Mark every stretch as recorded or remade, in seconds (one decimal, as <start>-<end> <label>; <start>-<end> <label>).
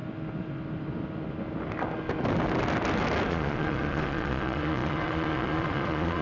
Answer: 0.0-3.3 recorded; 3.3-6.2 remade